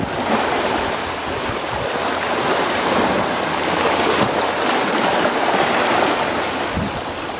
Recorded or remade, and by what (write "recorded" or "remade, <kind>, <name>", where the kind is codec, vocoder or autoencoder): recorded